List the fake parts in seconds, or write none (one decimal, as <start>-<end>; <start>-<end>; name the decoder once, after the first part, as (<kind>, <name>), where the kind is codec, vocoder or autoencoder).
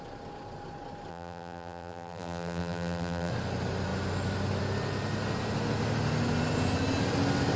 1.1-3.3 (vocoder, BigVGAN v2)